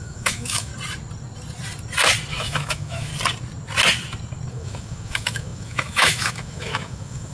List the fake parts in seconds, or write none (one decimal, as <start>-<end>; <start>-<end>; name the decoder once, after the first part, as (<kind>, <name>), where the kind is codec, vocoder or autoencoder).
0.0-0.7 (autoencoder, DAC-VAE); 2.3-3.1; 4.5-7.3

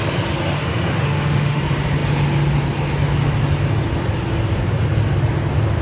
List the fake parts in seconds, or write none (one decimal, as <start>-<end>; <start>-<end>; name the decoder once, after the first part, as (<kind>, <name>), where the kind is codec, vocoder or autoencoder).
0.4-1.6 (autoencoder, DAC-VAE)

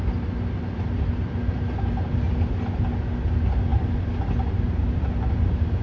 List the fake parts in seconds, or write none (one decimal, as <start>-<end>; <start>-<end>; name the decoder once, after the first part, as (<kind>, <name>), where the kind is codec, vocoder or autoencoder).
none